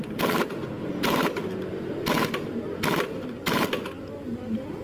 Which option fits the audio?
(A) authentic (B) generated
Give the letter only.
A